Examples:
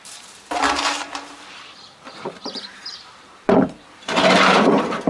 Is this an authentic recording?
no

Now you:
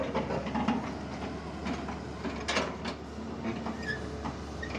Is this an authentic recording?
yes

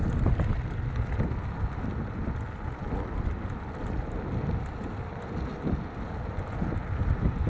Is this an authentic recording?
yes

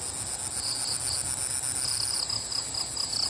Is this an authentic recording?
yes